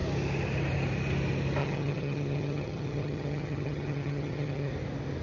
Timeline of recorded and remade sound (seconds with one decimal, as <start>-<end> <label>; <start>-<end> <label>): 0.0-1.6 recorded; 1.6-4.7 remade; 4.7-5.2 recorded